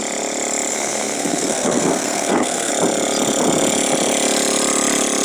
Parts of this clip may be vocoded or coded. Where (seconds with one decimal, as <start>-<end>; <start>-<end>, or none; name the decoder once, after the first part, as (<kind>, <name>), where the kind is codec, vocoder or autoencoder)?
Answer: 0.7-2.7 (codec, SNAC)